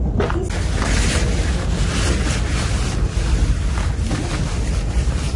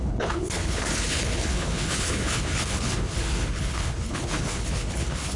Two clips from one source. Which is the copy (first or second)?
second